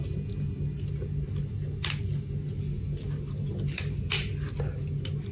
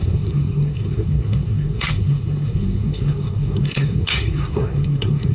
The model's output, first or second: second